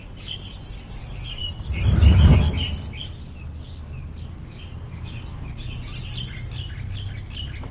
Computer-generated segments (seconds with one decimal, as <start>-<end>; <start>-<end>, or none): none